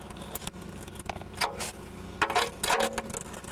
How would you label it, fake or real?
real